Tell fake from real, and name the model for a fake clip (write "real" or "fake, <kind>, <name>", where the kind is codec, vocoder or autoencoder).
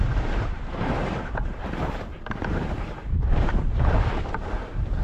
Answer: fake, vocoder, BigVGAN v2